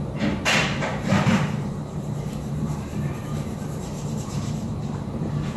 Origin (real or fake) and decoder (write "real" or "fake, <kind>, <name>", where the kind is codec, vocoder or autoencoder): fake, vocoder, BigVGAN v2